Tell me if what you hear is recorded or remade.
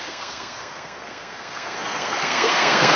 remade